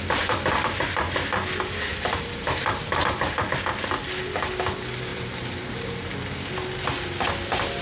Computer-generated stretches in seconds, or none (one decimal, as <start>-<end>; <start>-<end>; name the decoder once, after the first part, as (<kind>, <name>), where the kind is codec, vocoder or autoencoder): 1.9-2.5 (vocoder, BigVGAN v2); 5.1-5.7